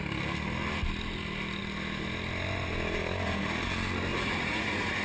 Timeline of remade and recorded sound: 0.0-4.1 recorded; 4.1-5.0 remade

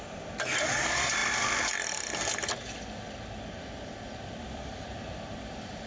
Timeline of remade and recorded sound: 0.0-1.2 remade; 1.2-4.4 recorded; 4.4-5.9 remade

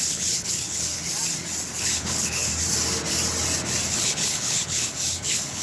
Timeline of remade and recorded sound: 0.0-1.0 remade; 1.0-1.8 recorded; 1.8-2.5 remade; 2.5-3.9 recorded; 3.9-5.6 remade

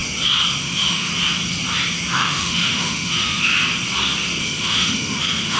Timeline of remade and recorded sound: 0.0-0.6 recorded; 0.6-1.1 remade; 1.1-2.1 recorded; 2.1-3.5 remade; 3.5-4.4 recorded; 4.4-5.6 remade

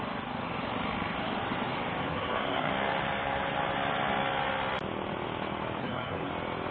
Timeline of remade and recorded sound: 0.0-2.0 recorded; 2.0-2.7 remade; 2.7-5.8 recorded; 5.8-6.3 remade; 6.3-6.7 recorded

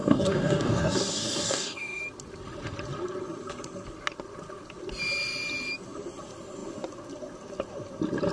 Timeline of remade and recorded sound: 0.0-2.0 remade; 2.0-8.3 recorded